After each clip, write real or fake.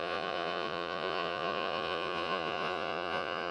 fake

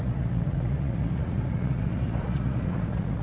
fake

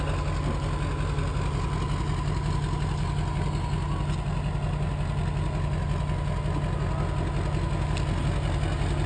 real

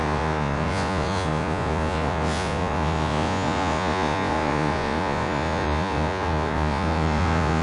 fake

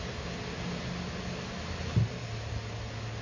real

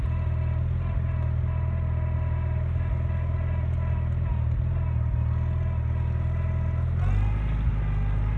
real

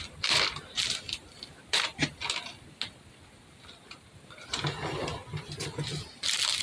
real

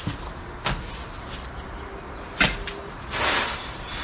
real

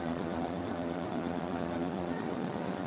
fake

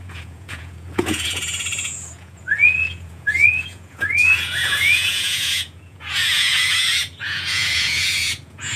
fake